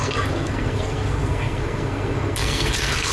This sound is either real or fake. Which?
fake